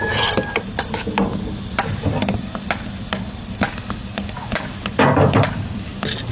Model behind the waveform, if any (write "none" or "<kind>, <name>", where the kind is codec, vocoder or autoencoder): none